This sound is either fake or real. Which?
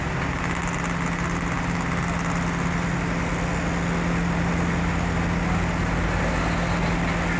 real